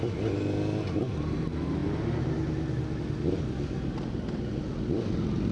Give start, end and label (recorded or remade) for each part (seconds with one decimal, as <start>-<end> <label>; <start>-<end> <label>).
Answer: 0.0-5.5 recorded